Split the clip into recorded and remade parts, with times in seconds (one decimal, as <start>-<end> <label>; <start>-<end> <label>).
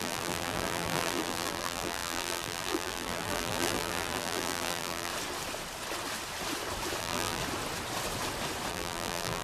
0.0-5.1 remade; 5.1-7.0 recorded; 7.0-7.4 remade; 7.4-8.7 recorded; 8.7-9.4 remade